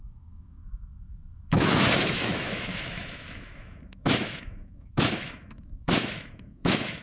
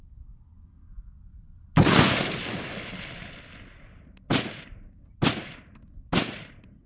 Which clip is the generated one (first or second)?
first